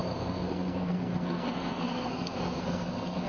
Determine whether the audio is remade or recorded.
remade